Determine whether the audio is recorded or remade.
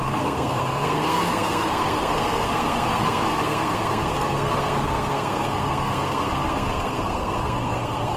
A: remade